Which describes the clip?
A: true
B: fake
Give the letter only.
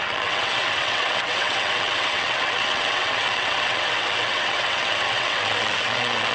B